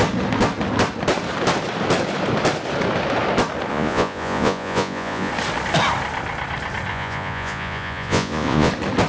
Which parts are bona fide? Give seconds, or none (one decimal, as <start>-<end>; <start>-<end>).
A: 0.0-3.7; 5.3-6.9; 8.7-9.1